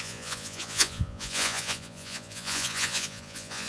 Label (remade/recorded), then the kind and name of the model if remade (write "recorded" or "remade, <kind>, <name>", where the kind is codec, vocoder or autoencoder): remade, vocoder, Vocos